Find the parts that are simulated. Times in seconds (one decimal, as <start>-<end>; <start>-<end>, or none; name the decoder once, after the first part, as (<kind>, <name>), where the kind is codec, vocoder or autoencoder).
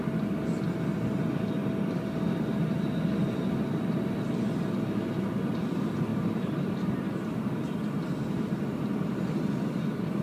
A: 2.5-3.2 (vocoder, BigVGAN v2); 6.1-7.9